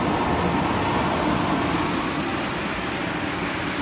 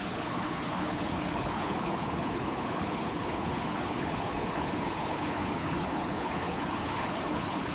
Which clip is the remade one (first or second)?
second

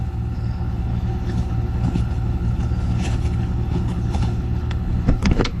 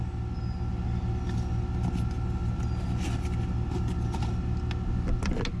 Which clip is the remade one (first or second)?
first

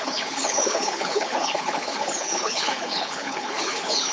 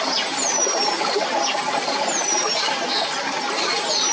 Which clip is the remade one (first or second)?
first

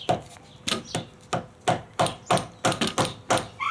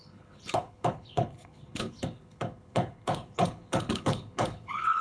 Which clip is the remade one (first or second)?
second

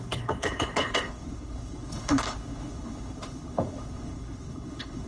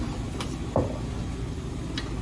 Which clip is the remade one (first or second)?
first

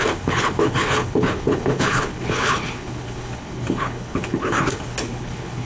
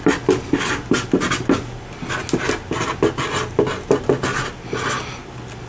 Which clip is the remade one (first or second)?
first